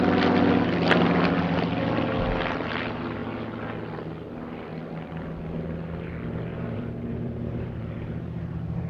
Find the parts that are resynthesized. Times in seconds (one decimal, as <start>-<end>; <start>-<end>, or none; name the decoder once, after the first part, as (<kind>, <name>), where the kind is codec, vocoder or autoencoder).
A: 6.5-8.9 (vocoder, BigVGAN v2)

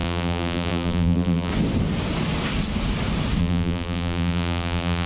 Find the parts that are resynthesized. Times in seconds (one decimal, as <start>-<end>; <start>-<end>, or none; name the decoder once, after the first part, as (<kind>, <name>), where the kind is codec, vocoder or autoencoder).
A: 0.0-1.5 (vocoder, BigVGAN v2); 3.4-5.1

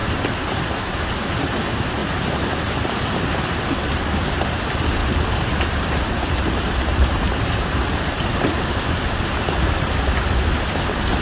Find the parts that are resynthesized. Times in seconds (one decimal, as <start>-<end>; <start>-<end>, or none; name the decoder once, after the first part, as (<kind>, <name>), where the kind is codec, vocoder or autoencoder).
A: 2.0-3.5 (vocoder, BigVGAN v2); 5.0-7.9

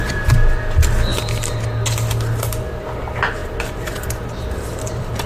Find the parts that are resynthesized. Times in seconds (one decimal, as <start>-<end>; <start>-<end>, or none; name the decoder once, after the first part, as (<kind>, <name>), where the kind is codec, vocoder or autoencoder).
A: 3.4-5.3 (vocoder, BigVGAN v2)

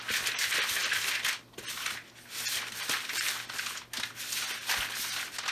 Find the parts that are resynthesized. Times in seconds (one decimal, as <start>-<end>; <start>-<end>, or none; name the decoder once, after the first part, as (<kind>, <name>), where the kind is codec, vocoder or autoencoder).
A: 0.0-5.5 (vocoder, BigVGAN v2)